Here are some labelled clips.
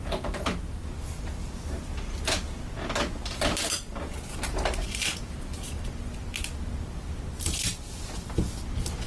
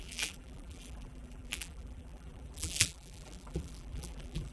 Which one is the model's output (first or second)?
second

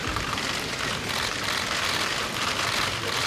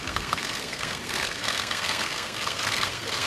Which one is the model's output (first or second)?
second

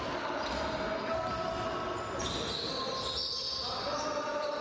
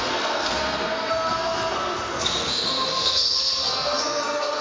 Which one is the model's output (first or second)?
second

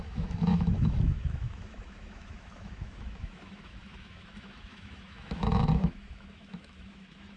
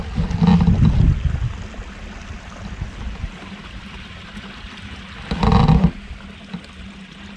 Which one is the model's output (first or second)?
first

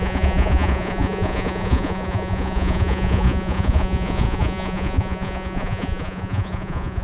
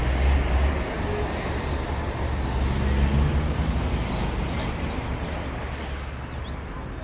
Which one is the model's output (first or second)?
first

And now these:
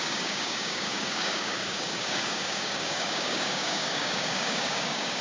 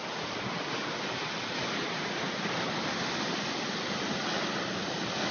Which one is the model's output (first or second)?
first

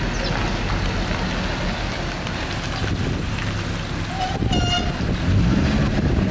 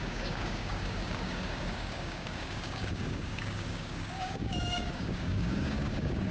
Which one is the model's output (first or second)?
second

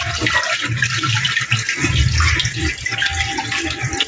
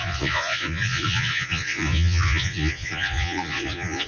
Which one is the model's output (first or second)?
second